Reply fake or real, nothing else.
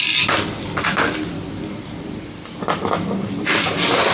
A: real